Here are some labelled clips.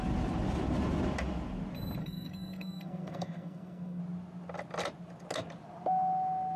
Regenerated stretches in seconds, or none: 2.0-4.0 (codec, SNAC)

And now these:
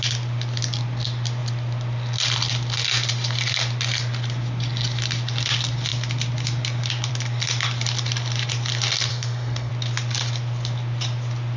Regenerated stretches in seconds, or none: 9.1-9.7 (codec, SNAC)

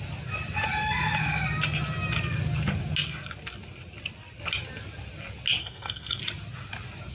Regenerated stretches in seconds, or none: 5.6-6.2 (codec, SNAC)

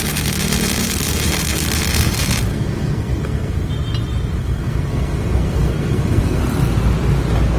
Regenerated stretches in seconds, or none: 2.5-3.7 (codec, SNAC); 4.4-6.4

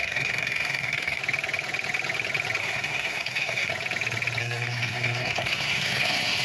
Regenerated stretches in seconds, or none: 0.0-1.2 (codec, SNAC); 2.6-3.7; 4.4-6.4

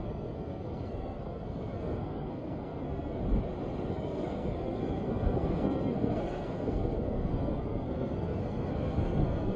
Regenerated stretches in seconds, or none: 0.0-3.2 (codec, SNAC); 3.9-9.6

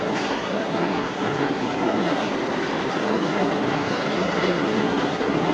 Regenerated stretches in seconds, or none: 0.0-2.3 (codec, SNAC); 2.9-5.5